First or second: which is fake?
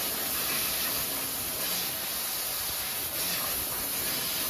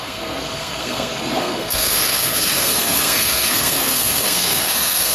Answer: second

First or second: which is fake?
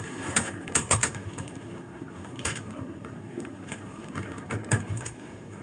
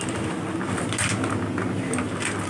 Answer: first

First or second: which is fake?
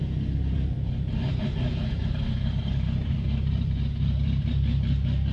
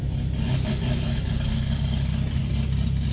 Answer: first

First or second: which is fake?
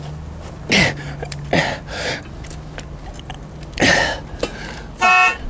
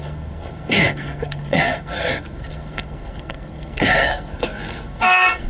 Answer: second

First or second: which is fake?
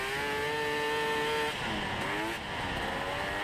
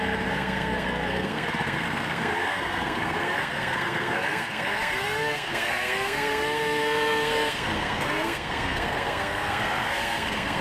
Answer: second